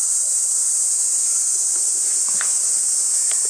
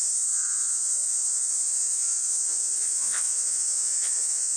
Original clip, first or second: first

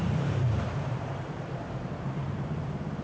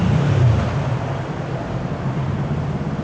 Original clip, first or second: second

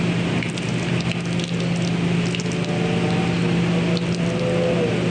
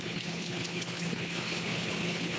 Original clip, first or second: first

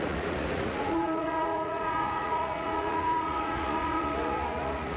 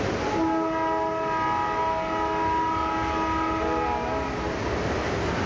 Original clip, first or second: second